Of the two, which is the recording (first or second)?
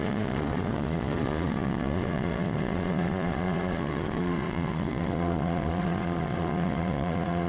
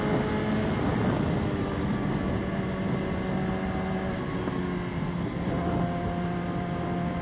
second